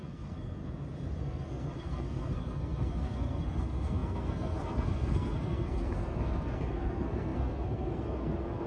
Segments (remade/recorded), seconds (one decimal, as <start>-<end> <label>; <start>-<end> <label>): 0.0-0.6 remade; 0.6-1.2 recorded; 1.2-8.7 remade